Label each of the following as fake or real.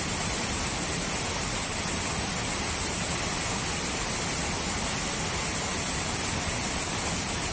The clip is real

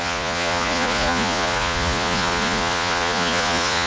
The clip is fake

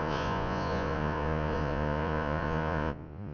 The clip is fake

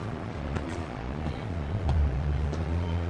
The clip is fake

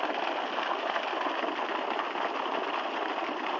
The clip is real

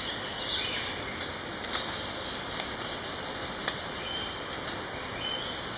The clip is real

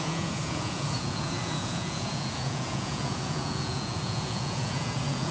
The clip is fake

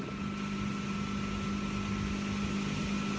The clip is real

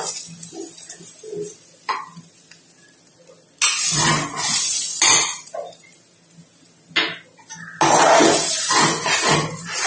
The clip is real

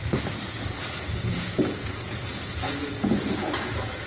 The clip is fake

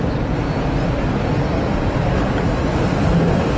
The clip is real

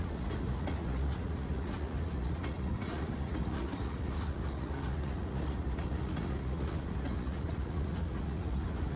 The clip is fake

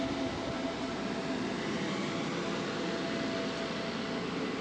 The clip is real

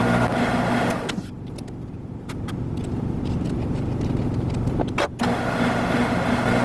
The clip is real